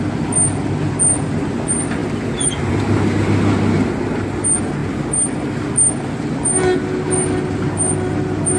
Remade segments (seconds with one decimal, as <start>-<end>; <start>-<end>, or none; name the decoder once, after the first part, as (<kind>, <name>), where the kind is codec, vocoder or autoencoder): none